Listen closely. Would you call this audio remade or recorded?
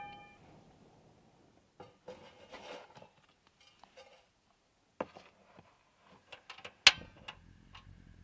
recorded